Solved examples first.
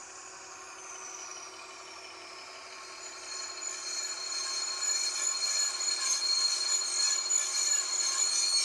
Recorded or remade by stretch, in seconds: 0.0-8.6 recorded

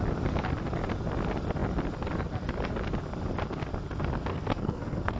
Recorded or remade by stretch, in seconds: 0.0-4.3 recorded; 4.3-5.2 remade

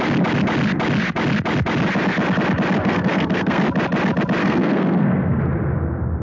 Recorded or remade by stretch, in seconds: 0.0-2.8 recorded; 2.8-3.6 remade; 3.6-4.4 recorded; 4.4-5.4 remade; 5.4-6.2 recorded